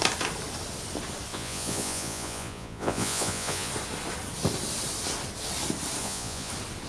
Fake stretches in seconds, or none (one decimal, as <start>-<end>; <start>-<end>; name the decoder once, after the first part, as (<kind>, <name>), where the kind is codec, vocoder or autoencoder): 1.3-3.7 (vocoder, Vocos); 6.0-6.5